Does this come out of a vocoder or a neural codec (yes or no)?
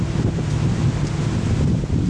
no